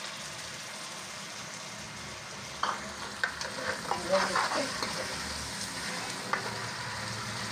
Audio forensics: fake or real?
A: real